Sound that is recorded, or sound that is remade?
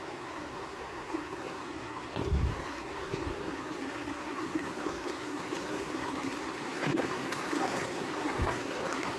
remade